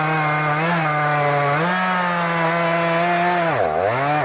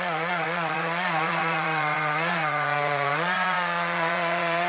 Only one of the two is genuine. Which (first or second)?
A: first